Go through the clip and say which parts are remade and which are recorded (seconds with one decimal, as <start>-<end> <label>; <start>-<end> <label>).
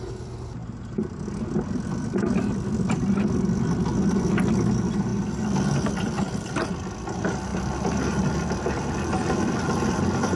0.0-10.4 recorded